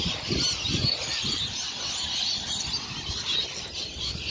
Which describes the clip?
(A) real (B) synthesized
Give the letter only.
A